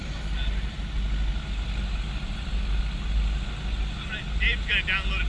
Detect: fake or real real